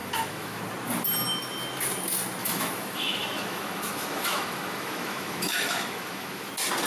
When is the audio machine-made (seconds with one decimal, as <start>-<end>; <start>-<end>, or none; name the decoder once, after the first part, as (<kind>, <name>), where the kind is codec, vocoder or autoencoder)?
0.0-0.6 (autoencoder, DAC-VAE); 2.4-6.5